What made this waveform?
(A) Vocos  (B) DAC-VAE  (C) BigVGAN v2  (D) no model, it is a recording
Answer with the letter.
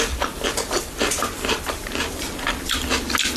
D